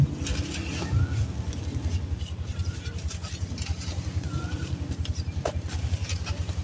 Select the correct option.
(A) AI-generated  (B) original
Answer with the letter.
B